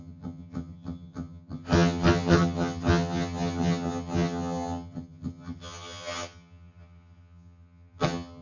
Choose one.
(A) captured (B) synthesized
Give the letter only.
B